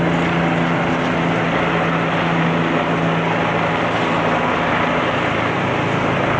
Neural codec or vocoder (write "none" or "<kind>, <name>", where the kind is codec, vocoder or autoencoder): none